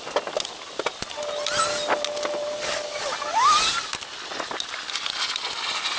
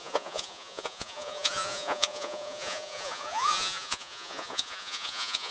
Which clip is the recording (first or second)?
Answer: first